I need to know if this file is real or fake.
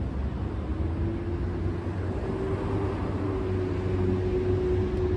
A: real